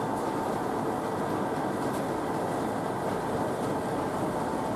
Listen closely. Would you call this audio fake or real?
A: real